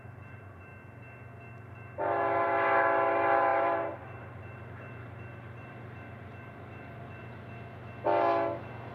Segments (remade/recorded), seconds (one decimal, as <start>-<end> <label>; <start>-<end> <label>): 0.0-0.7 remade; 0.7-1.5 recorded; 1.5-7.2 remade; 7.2-8.9 recorded